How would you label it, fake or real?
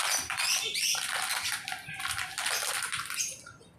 real